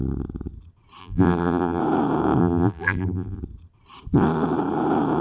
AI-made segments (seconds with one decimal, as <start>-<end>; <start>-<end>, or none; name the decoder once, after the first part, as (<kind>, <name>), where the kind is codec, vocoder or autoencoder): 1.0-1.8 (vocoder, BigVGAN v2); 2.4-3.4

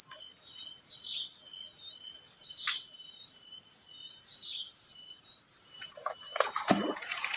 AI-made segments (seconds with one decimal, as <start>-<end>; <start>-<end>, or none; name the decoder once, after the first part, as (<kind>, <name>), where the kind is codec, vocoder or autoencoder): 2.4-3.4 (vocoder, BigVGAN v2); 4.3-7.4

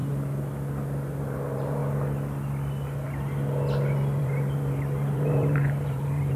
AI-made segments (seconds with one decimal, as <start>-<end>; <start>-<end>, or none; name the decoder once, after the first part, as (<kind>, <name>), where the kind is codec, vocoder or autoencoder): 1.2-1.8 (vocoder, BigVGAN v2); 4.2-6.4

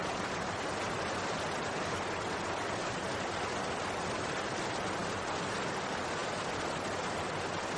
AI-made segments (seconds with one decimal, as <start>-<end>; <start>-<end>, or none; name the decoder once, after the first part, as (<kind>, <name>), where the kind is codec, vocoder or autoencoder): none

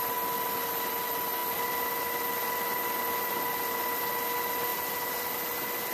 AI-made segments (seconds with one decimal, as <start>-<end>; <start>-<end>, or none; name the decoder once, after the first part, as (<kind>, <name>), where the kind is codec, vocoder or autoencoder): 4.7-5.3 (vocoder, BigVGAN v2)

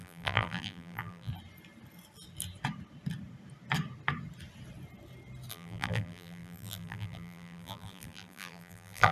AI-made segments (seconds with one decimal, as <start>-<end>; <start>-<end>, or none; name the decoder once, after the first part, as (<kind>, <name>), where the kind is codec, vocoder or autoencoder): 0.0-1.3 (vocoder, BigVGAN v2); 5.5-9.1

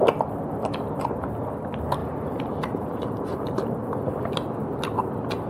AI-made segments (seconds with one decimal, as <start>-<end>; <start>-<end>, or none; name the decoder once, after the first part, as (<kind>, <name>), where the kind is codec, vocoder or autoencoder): 2.0-4.2 (vocoder, BigVGAN v2)